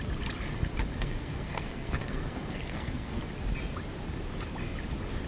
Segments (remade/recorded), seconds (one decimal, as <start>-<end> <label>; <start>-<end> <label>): 0.0-0.9 recorded; 0.9-3.2 remade; 3.2-5.3 recorded

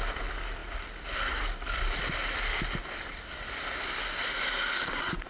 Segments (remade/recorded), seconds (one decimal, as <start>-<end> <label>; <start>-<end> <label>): 0.0-5.3 recorded

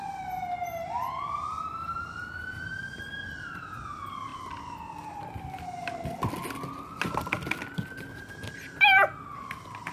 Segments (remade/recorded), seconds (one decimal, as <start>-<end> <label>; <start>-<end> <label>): 0.0-9.9 recorded

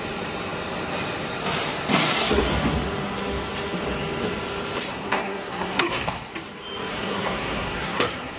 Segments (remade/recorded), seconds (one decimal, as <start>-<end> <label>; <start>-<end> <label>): 0.0-1.9 recorded; 1.9-2.4 remade; 2.4-4.9 recorded; 4.9-6.3 remade; 6.3-6.9 recorded; 6.9-8.4 remade

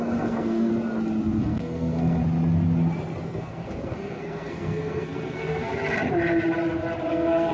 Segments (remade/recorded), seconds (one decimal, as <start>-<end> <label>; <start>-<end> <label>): 0.0-0.7 remade; 0.7-1.4 recorded; 1.4-2.2 remade; 2.2-3.2 recorded; 3.2-5.7 remade; 5.7-7.1 recorded; 7.1-7.5 remade

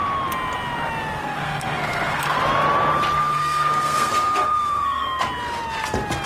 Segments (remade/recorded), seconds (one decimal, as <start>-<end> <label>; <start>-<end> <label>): 0.0-1.2 recorded; 1.2-2.4 remade; 2.4-3.2 recorded; 3.2-5.2 remade; 5.2-6.3 recorded

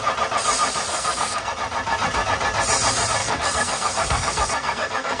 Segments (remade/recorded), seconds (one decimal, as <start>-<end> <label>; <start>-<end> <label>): 0.0-0.9 recorded; 0.9-1.5 remade; 1.5-3.2 recorded; 3.2-5.2 remade

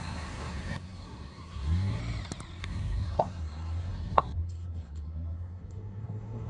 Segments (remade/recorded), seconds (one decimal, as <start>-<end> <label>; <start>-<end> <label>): 0.0-2.0 remade; 2.0-2.6 recorded; 2.6-6.5 remade